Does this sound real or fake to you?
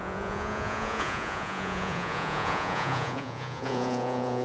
fake